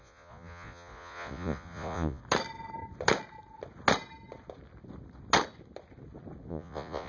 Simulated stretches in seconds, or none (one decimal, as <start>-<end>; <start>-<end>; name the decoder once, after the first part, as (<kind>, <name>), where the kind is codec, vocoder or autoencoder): 0.0-2.2 (vocoder, Vocos); 6.5-7.1